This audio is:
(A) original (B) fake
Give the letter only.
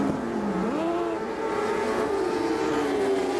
A